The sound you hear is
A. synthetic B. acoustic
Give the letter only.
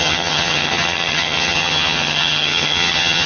A